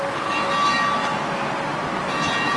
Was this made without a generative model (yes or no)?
yes